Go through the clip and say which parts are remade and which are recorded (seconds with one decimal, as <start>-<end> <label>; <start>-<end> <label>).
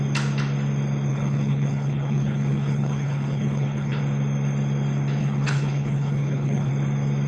0.0-1.1 recorded; 1.1-4.0 remade; 4.0-5.2 recorded; 5.2-6.7 remade; 6.7-7.3 recorded